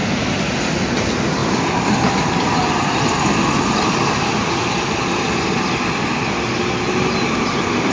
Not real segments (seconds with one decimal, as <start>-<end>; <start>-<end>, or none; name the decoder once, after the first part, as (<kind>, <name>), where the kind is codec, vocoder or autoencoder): 0.0-0.7 (vocoder, BigVGAN v2); 1.4-6.1